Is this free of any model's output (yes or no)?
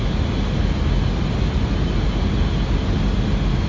yes